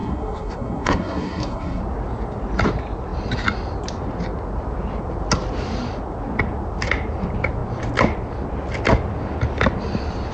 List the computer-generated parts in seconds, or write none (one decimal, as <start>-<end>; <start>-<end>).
0.0-1.8